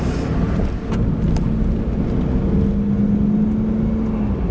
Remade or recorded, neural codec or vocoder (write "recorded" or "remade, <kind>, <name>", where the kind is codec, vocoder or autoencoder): recorded